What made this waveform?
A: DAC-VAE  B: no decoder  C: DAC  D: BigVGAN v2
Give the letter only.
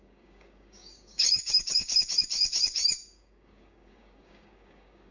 C